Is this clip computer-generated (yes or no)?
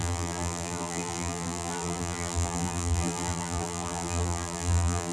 yes